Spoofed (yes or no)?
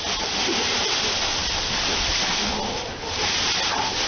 no